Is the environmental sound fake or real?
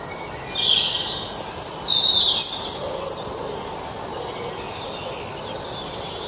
real